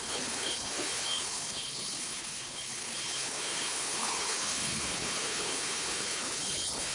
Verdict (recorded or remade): remade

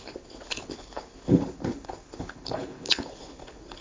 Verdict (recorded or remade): remade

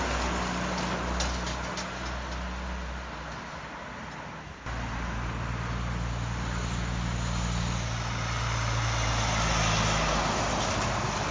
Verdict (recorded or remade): recorded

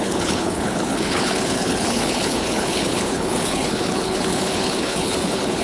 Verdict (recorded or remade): remade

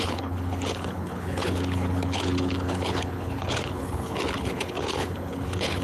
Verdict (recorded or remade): remade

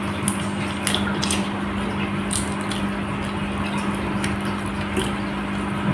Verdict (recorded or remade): recorded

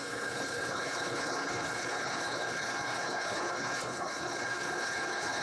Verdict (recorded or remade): remade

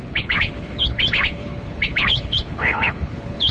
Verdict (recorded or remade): remade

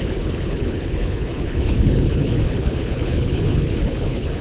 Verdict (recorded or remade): remade